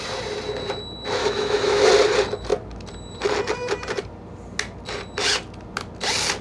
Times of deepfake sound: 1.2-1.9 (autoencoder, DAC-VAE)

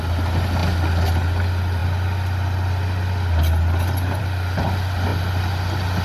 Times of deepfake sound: none